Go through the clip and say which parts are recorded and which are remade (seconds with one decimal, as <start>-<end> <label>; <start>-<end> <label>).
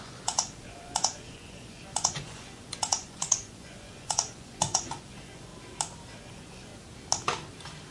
0.0-5.5 remade; 5.5-6.2 recorded; 6.2-6.7 remade; 6.7-7.9 recorded